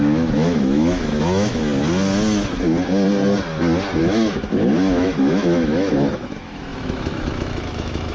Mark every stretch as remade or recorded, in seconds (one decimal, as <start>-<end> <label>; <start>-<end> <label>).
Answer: 0.0-1.6 remade; 1.6-4.0 recorded; 4.0-8.1 remade

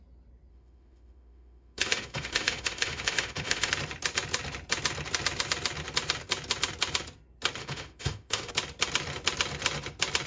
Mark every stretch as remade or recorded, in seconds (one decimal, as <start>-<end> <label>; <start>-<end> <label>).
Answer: 0.0-0.5 recorded; 0.5-3.7 remade; 3.7-7.6 recorded; 7.6-8.5 remade; 8.5-10.3 recorded

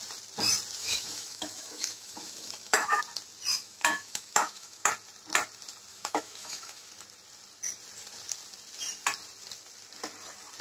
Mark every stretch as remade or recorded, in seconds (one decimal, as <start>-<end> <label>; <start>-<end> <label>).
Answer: 0.0-0.8 recorded; 0.8-3.0 remade; 3.0-3.5 recorded; 3.5-4.9 remade; 4.9-5.9 recorded; 5.9-6.9 remade; 6.9-10.6 recorded

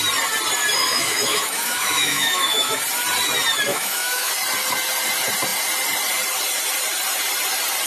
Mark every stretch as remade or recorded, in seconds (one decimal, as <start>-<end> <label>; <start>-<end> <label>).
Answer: 0.0-0.8 recorded; 0.8-2.8 remade; 2.8-3.7 recorded; 3.7-4.3 remade; 4.3-7.9 recorded

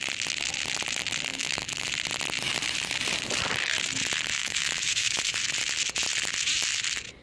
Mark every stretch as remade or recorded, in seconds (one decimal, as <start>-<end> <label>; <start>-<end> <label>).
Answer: 0.0-1.3 recorded; 1.3-1.9 remade; 1.9-4.4 recorded; 4.4-5.4 remade; 5.4-7.2 recorded

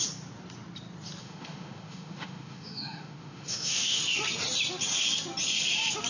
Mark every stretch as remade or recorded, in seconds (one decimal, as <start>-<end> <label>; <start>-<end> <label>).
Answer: 0.0-1.2 recorded; 1.2-4.0 remade; 4.0-6.1 recorded

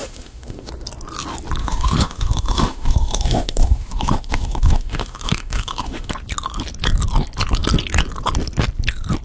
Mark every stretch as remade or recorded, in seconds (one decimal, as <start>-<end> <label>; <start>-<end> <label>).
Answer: 0.0-0.7 remade; 0.7-1.6 recorded; 1.6-6.1 remade; 6.1-9.2 recorded

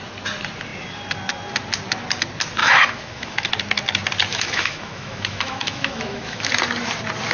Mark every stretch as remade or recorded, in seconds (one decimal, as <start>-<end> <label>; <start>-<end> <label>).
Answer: 0.0-2.6 recorded; 2.6-3.5 remade; 3.5-4.3 recorded; 4.3-6.5 remade; 6.5-7.3 recorded